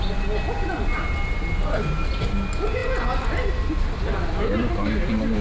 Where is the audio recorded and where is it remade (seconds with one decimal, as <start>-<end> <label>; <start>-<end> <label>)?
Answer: 0.0-5.4 recorded

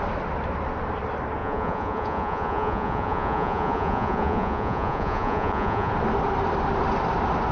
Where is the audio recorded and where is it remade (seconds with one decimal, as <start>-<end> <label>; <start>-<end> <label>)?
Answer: 0.0-1.4 recorded; 1.4-5.9 remade; 5.9-7.5 recorded